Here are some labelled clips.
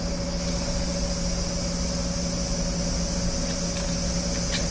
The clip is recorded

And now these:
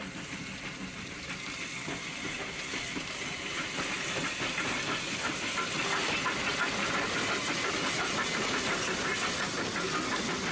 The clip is recorded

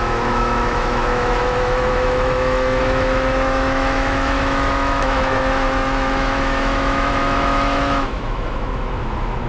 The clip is remade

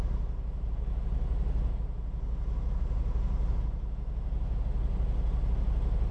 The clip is recorded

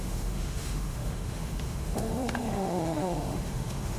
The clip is remade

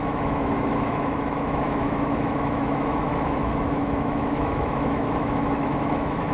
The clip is remade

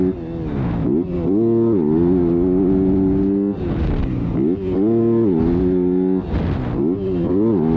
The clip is recorded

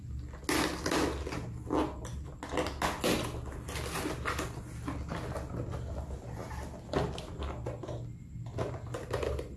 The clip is recorded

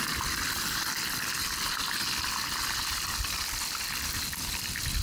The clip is recorded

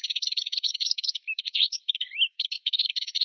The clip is remade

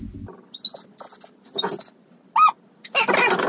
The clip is recorded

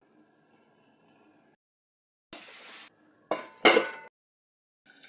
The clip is recorded